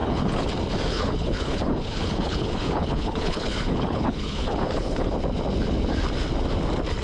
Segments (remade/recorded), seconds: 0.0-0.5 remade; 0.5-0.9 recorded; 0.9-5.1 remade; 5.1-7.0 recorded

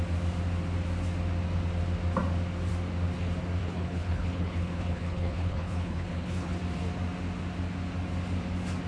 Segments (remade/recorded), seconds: 0.0-3.6 recorded; 3.6-6.6 remade; 6.6-8.9 recorded

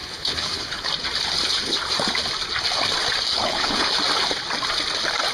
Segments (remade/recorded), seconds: 0.0-0.9 remade; 0.9-3.3 recorded; 3.3-3.9 remade; 3.9-5.3 recorded